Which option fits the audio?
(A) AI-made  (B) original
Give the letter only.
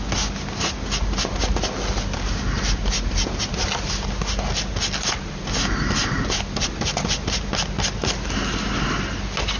B